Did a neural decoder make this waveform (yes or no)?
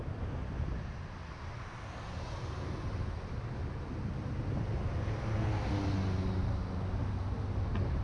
no